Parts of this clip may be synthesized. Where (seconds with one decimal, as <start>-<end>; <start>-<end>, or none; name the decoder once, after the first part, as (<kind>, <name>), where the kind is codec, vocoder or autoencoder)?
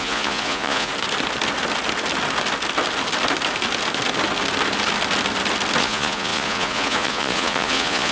0.0-0.9 (vocoder, Vocos); 5.8-8.1